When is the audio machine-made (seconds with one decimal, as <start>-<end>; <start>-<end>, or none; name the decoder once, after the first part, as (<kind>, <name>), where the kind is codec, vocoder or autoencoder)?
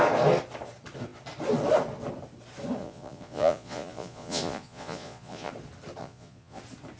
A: 2.8-5.5 (vocoder, Vocos); 6.0-6.6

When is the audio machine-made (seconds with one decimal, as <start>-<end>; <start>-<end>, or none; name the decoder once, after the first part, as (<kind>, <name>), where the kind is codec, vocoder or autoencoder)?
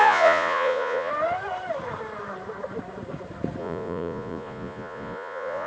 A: 0.0-1.1 (vocoder, Vocos); 3.6-5.7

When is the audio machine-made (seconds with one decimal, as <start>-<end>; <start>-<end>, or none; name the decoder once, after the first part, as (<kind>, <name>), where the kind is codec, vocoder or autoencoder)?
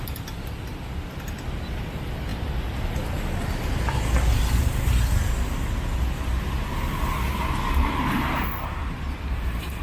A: none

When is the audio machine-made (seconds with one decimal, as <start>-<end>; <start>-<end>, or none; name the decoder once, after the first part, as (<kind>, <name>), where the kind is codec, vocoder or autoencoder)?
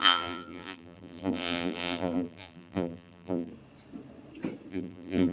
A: 0.0-3.5 (vocoder, BigVGAN v2); 4.7-5.3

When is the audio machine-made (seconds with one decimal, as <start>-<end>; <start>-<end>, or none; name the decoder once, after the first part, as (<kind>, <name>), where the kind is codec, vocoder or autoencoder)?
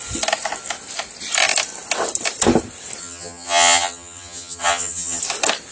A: 3.0-5.2 (vocoder, HiFi-GAN)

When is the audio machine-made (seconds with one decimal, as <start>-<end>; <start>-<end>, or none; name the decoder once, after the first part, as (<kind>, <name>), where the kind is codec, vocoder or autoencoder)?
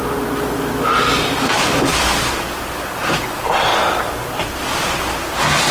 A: 1.9-2.6 (vocoder, BigVGAN v2); 3.7-5.0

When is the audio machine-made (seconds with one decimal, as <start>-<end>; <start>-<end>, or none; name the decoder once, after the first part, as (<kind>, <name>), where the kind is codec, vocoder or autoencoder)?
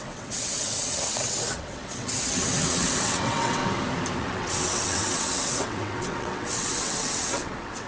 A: 0.0-3.6 (vocoder, WaveNeXt); 4.2-7.9